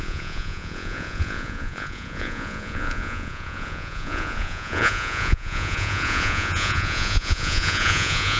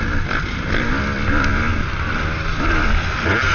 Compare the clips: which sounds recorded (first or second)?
second